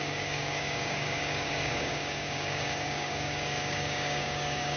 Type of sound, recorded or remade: remade